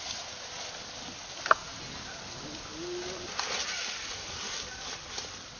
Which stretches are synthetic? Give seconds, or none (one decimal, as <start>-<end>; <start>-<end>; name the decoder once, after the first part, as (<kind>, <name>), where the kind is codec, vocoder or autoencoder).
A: none